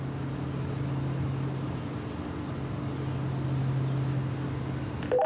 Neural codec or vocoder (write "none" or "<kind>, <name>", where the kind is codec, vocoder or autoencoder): none